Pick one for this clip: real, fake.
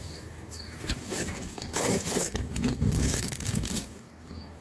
fake